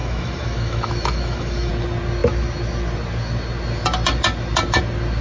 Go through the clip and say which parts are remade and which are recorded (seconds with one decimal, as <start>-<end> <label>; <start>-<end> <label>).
0.0-1.7 remade; 1.7-5.2 recorded

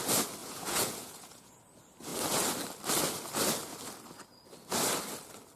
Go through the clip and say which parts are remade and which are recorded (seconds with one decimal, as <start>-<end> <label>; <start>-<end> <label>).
0.0-0.4 recorded; 0.4-1.6 remade; 1.6-5.6 recorded

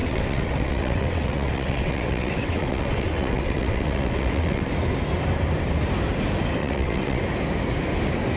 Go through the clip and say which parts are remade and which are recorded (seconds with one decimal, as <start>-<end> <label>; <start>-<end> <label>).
0.0-4.7 remade; 4.7-6.6 recorded; 6.6-7.2 remade; 7.2-8.4 recorded

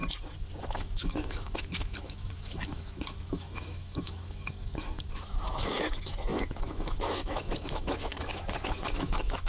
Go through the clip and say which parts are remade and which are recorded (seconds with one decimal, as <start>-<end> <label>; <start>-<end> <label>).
0.0-0.6 recorded; 0.6-9.5 remade

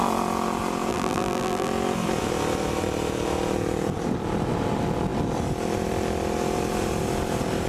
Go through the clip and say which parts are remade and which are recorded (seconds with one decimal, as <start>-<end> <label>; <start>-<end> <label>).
0.0-0.9 recorded; 0.9-1.7 remade; 1.7-7.7 recorded

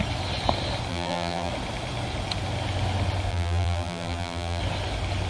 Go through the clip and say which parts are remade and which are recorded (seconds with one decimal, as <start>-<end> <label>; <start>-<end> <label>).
0.0-0.9 recorded; 0.9-1.5 remade; 1.5-3.3 recorded; 3.3-4.6 remade; 4.6-5.3 recorded